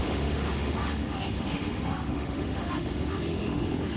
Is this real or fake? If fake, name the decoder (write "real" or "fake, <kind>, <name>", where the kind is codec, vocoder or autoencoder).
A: fake, autoencoder, DAC-VAE